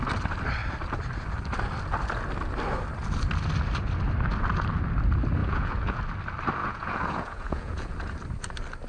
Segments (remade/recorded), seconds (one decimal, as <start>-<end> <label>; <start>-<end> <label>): 0.0-5.4 recorded; 5.4-6.0 remade; 6.0-6.6 recorded; 6.6-7.9 remade; 7.9-8.9 recorded